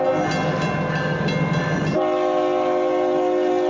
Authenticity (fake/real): real